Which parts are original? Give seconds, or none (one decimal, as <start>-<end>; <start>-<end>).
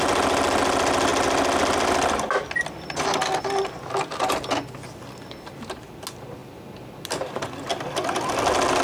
0.0-8.8